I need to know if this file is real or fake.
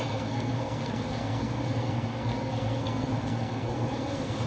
fake